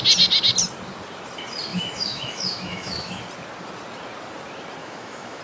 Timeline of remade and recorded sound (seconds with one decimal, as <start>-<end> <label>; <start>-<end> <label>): 0.0-1.7 recorded; 1.7-3.2 remade; 3.2-4.8 recorded; 4.8-5.4 remade